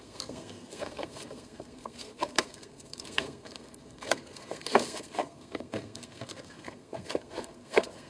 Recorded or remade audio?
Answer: remade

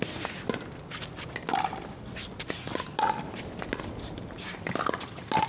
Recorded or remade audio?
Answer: recorded